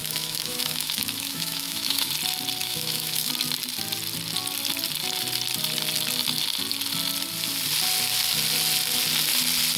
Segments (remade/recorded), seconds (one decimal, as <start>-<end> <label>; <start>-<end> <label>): 0.0-2.1 remade; 2.1-2.6 recorded; 2.6-3.3 remade; 3.3-9.8 recorded